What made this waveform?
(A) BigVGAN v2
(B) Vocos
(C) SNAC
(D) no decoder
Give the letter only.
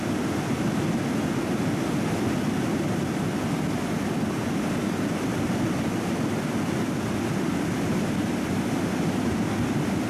D